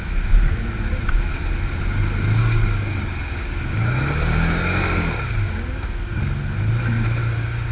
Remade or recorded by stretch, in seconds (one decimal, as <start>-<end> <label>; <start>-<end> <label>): 0.0-2.4 recorded; 2.4-6.2 remade; 6.2-7.2 recorded; 7.2-7.7 remade